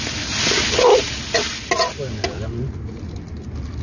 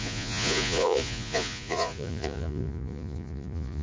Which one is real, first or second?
first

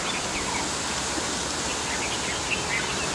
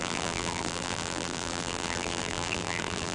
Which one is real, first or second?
first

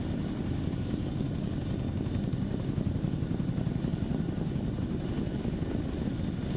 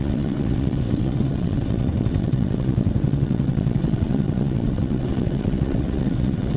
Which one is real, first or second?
first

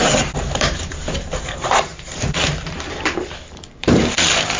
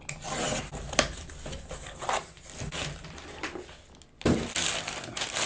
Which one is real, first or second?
second